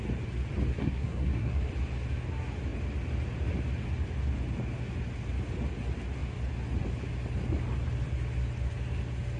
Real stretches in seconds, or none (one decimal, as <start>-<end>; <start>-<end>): 0.0-0.7; 1.7-9.4